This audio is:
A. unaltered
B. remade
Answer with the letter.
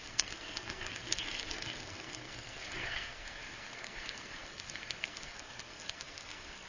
B